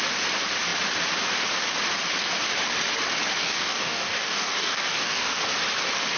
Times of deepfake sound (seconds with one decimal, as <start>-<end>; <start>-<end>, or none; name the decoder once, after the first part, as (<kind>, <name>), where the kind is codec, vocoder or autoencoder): 3.4-5.4 (codec, DAC)